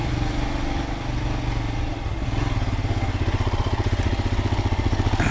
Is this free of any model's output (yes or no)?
yes